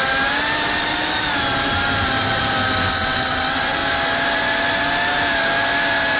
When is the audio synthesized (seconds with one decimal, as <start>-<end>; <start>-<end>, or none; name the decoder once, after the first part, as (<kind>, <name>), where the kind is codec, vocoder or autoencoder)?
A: 2.9-3.8 (vocoder, WaveNeXt)